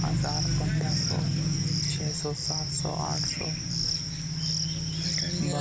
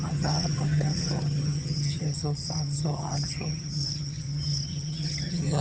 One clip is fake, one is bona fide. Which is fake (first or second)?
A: second